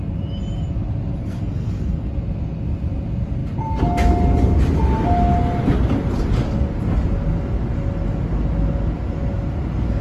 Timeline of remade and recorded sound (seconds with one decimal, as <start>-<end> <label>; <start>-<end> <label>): 0.0-1.2 recorded; 1.2-2.1 remade; 2.1-10.0 recorded